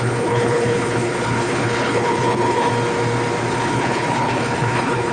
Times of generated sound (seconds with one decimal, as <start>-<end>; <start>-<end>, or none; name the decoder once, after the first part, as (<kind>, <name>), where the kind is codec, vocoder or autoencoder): 0.0-2.7 (codec, HILCodec); 3.5-5.1